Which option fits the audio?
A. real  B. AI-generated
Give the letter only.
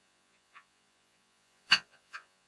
B